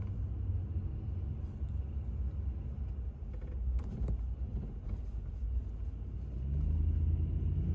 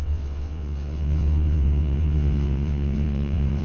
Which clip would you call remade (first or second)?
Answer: second